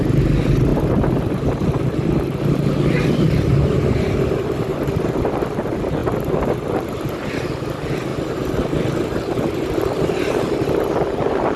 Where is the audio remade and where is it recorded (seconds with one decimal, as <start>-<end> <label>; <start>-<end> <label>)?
0.0-0.7 recorded; 0.7-4.3 remade; 4.3-4.7 recorded; 4.7-5.3 remade; 5.3-8.1 recorded; 8.1-10.3 remade; 10.3-11.6 recorded